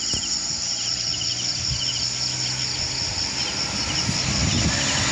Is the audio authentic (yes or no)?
yes